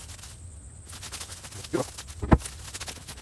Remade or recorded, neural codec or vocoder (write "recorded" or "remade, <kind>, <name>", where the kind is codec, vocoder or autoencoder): recorded